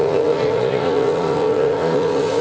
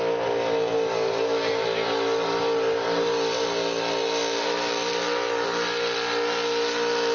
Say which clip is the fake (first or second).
first